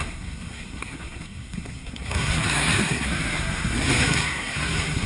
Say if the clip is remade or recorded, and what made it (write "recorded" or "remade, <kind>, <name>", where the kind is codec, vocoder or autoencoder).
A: remade, codec, SNAC